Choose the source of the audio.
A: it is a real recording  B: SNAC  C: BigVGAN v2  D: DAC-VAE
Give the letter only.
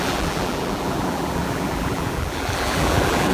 C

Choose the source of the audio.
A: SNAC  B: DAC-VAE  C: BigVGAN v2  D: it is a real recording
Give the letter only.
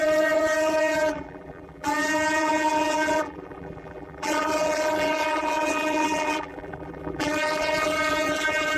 C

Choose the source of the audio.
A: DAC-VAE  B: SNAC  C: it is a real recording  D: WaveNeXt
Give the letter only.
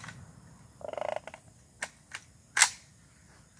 C